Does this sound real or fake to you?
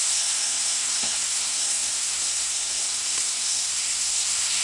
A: fake